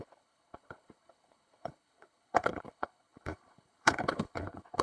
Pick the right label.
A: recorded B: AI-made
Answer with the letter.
B